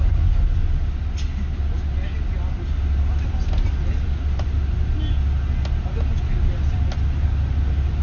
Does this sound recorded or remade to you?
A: recorded